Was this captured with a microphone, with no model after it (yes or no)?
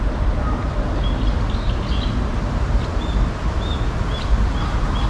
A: yes